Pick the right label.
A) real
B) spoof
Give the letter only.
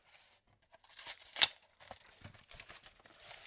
A